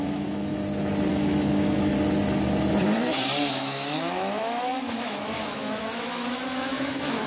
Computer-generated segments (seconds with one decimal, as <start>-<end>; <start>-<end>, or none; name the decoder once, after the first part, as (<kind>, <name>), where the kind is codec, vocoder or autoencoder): 0.0-0.5 (autoencoder, DAC-VAE); 1.1-1.9; 3.5-7.3